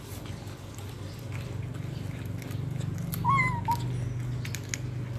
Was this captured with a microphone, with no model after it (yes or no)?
yes